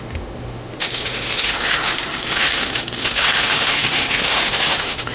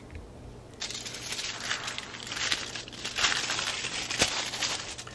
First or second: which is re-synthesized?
first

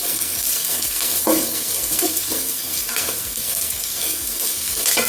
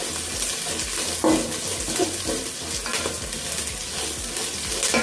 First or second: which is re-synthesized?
first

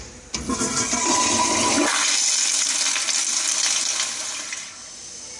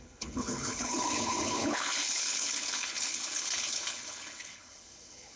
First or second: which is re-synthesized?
second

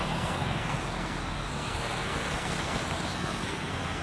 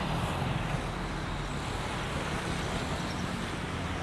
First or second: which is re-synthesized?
first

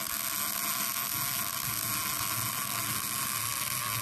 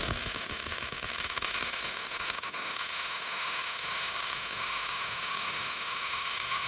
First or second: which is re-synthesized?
second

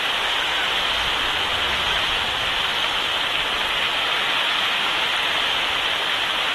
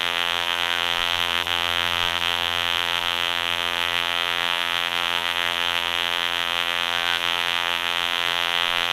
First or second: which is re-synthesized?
second